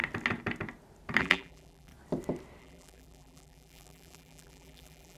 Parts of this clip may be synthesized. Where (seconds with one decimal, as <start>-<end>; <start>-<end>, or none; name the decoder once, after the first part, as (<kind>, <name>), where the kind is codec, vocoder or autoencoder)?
1.2-1.9 (vocoder, BigVGAN v2); 2.6-5.2